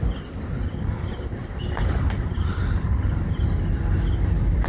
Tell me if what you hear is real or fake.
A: real